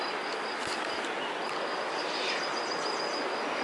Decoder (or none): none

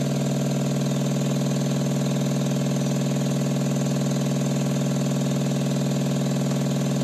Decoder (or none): none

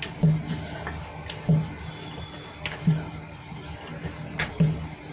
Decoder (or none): none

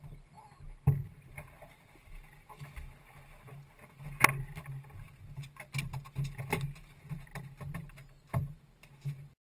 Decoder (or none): none